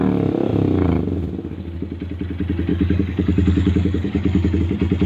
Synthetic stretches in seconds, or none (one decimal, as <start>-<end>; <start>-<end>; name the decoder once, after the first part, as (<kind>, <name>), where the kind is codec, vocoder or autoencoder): 2.7-4.6 (codec, DAC)